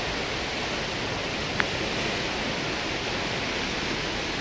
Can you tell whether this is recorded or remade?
recorded